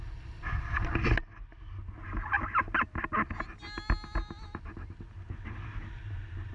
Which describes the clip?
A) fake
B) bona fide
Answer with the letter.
B